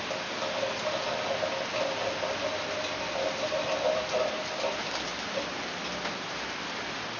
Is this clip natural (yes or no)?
yes